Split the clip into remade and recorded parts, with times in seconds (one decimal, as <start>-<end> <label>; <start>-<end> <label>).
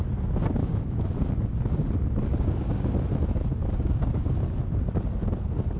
0.0-0.6 recorded; 0.6-1.2 remade; 1.2-2.3 recorded; 2.3-2.9 remade; 2.9-3.6 recorded; 3.6-4.4 remade; 4.4-5.8 recorded